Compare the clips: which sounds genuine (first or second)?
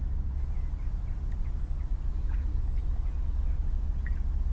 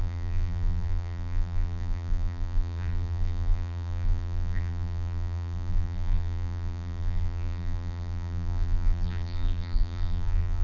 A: first